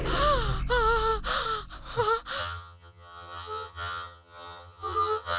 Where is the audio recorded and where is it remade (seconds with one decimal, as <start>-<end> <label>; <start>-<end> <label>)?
0.0-2.4 recorded; 2.4-5.4 remade